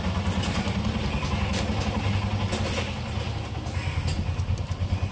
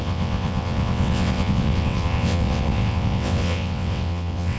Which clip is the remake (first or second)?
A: second